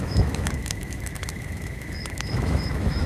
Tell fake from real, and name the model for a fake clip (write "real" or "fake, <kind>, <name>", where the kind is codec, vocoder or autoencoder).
fake, autoencoder, DAC-VAE